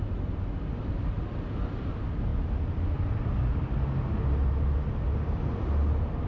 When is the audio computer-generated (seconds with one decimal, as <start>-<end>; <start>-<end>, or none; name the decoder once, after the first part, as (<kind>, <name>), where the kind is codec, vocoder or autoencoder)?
none